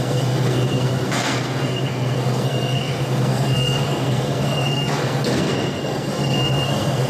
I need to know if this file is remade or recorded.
remade